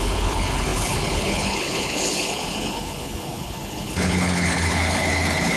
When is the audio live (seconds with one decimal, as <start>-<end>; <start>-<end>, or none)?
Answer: none